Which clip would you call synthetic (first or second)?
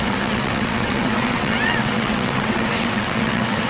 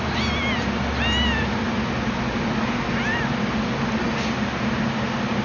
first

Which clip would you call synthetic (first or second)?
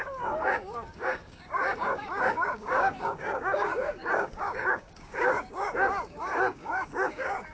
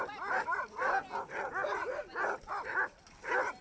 first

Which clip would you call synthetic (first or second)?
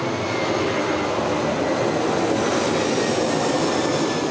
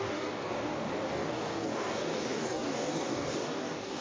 second